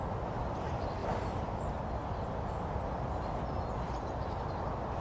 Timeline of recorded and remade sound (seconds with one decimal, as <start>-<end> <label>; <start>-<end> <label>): 0.0-5.0 recorded

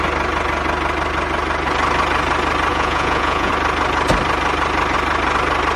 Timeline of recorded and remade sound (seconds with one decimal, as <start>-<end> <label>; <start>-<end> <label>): 0.0-2.7 recorded; 2.7-3.5 remade; 3.5-5.8 recorded

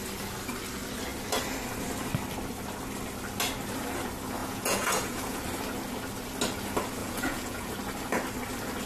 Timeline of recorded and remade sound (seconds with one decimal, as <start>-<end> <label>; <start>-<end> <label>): 0.0-4.4 recorded; 4.4-5.4 remade; 5.4-7.0 recorded; 7.0-7.7 remade; 7.7-8.9 recorded

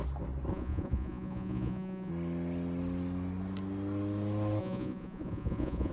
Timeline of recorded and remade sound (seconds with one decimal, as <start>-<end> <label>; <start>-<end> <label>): 0.0-0.5 recorded; 0.5-2.1 remade; 2.1-4.6 recorded; 4.6-5.9 remade

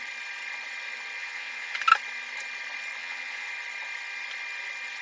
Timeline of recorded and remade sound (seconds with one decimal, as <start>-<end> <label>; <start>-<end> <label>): 0.0-1.2 recorded; 1.2-1.8 remade; 1.8-3.0 recorded; 3.0-3.5 remade; 3.5-5.0 recorded

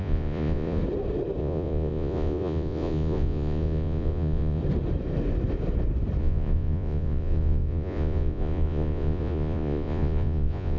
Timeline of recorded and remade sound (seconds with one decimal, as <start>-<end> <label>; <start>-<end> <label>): 0.0-0.8 remade; 0.8-1.4 recorded; 1.4-4.6 remade; 4.6-6.2 recorded; 6.2-10.8 remade

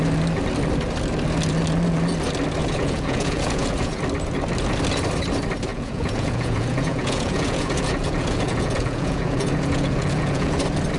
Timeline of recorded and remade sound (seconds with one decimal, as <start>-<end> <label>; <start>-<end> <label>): 0.0-2.6 recorded; 2.6-4.0 remade; 4.0-5.7 recorded; 5.7-10.6 remade; 10.6-11.0 recorded

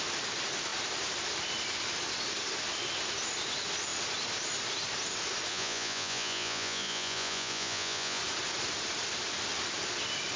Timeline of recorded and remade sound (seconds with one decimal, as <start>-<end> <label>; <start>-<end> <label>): 0.0-5.5 recorded; 5.5-8.2 remade; 8.2-10.4 recorded